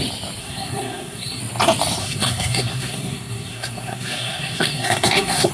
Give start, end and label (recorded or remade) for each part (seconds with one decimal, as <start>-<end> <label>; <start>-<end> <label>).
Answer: 0.0-0.4 recorded; 0.4-1.4 remade; 1.4-2.0 recorded; 2.0-5.5 remade